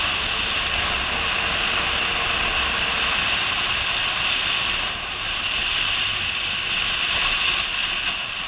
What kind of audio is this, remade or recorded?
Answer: recorded